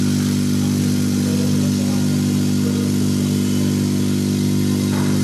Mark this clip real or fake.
real